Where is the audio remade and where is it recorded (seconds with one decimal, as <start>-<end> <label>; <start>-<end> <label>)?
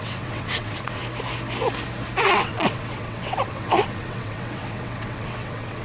0.0-1.0 remade; 1.0-2.2 recorded; 2.2-5.8 remade